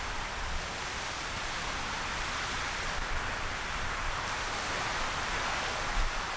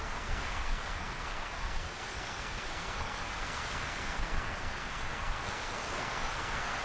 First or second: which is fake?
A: second